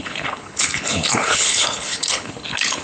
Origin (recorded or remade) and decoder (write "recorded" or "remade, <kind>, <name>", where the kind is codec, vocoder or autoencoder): remade, codec, HILCodec